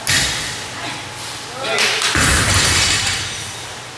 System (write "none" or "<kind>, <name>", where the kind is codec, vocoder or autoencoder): none